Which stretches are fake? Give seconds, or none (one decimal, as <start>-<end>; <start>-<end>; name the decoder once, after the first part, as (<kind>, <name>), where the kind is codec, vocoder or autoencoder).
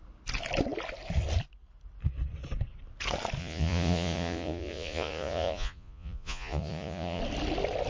3.4-7.2 (vocoder, Vocos)